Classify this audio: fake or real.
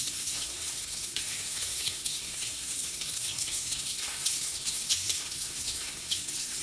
fake